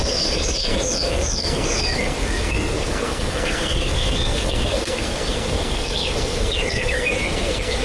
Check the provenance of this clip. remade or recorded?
remade